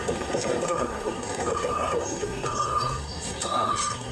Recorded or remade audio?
remade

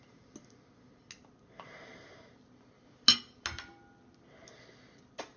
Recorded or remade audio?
recorded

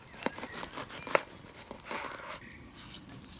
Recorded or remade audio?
recorded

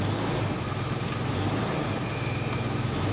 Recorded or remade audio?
recorded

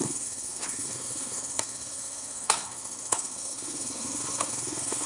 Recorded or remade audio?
remade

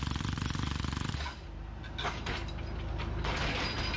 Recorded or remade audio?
recorded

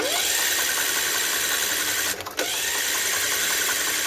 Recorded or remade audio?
recorded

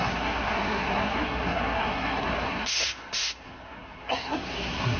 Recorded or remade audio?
remade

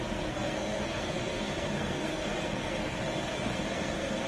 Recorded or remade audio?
remade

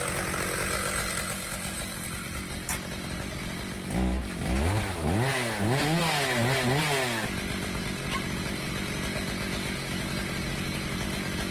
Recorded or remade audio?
recorded